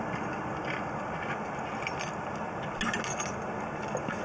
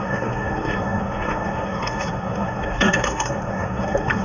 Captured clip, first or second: first